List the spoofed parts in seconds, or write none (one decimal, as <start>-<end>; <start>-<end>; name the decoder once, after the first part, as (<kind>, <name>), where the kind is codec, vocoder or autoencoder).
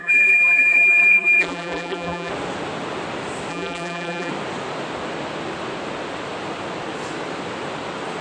0.0-2.3 (vocoder, BigVGAN v2); 3.5-4.3